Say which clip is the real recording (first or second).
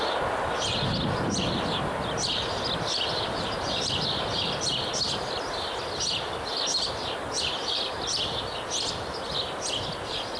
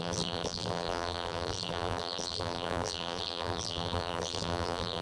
first